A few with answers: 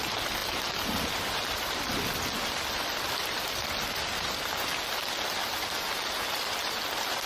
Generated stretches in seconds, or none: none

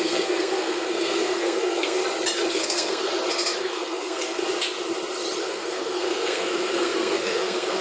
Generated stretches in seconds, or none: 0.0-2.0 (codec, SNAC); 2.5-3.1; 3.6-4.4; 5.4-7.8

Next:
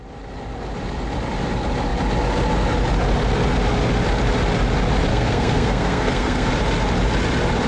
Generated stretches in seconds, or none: 5.1-6.5 (codec, SNAC)